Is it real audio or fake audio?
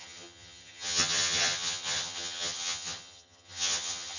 fake